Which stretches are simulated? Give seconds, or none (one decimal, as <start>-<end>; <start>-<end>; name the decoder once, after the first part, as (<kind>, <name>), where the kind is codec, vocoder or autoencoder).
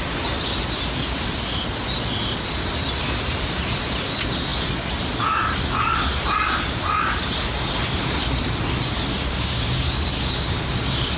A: 9.3-10.5 (codec, DAC)